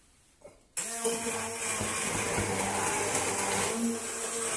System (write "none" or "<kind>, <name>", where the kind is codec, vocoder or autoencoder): none